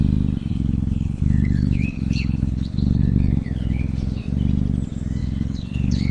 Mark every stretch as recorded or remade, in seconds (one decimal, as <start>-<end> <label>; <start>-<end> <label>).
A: 0.0-0.5 recorded; 0.5-4.2 remade; 4.2-5.2 recorded; 5.2-6.1 remade